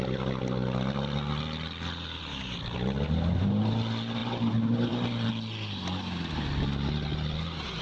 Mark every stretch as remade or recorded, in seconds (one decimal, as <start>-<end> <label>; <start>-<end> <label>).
0.0-4.2 recorded; 4.2-5.3 remade; 5.3-7.8 recorded